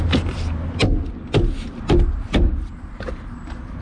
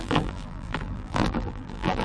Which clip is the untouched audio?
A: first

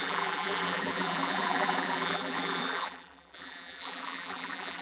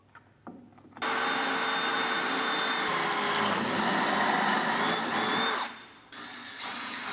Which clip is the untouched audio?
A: second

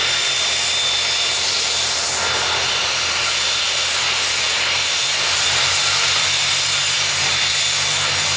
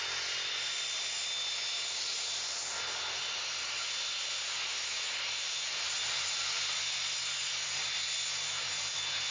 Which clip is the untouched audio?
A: second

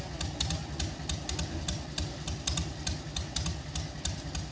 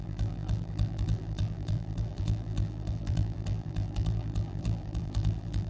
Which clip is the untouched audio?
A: first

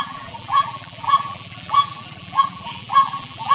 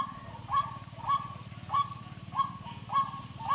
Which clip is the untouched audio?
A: second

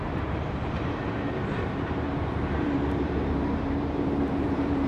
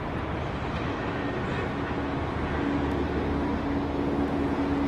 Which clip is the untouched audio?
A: second